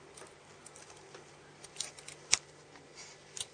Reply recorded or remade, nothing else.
recorded